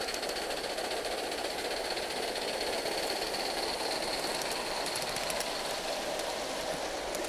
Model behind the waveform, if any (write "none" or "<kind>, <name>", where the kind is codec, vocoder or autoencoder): none